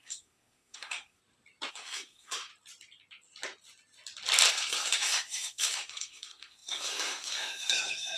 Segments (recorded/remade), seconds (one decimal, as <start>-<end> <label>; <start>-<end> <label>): 0.0-1.2 remade; 1.2-1.7 recorded; 1.7-2.5 remade; 2.5-4.5 recorded; 4.5-8.2 remade